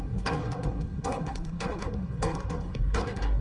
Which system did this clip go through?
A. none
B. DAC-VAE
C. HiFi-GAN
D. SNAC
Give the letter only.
D